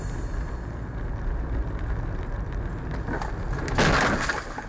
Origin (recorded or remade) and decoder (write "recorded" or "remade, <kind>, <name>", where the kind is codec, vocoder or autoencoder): recorded